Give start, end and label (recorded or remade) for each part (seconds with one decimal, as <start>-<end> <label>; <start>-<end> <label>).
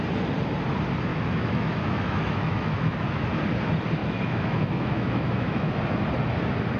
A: 0.0-1.1 recorded; 1.1-3.3 remade; 3.3-4.0 recorded; 4.0-5.7 remade; 5.7-6.8 recorded